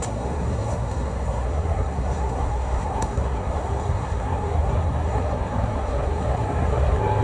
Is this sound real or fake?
fake